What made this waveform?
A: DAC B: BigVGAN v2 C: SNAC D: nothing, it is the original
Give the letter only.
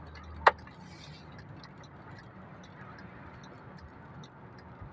D